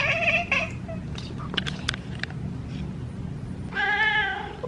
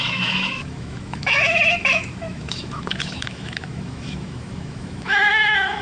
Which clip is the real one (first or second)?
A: first